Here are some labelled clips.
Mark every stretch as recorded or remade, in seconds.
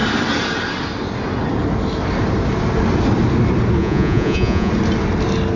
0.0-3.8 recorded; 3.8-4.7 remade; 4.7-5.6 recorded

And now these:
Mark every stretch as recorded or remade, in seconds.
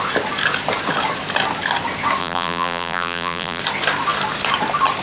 0.0-2.2 recorded; 2.2-3.6 remade; 3.6-5.0 recorded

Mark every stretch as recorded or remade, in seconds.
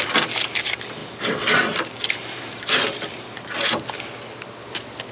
0.0-1.0 recorded; 1.0-4.1 remade; 4.1-5.1 recorded